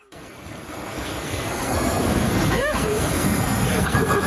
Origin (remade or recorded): remade